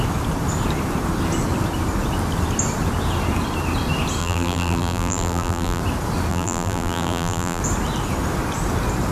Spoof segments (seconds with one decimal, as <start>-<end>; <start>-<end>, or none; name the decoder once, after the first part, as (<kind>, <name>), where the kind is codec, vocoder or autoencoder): 4.2-5.8 (vocoder, BigVGAN v2); 6.3-7.6